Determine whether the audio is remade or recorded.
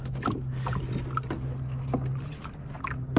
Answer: recorded